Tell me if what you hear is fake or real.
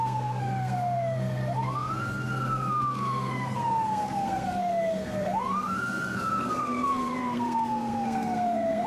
fake